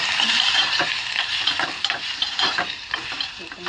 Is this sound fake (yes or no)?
yes